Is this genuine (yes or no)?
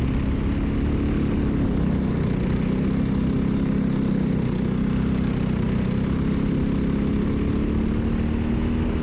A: yes